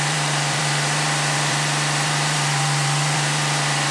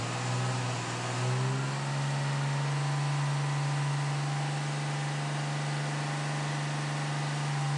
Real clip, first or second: second